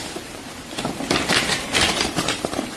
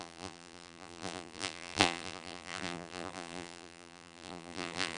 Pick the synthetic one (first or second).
second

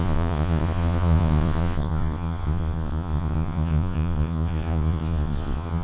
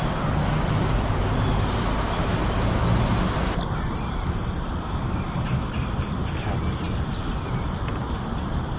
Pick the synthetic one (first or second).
first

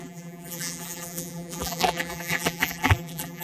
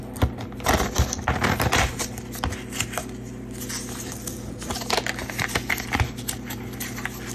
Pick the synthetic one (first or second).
first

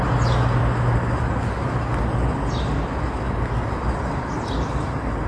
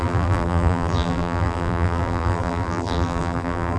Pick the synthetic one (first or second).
second